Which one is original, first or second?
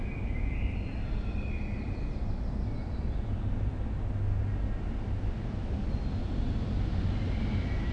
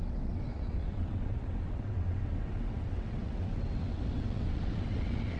first